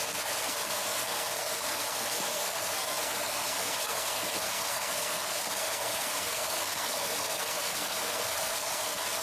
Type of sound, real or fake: fake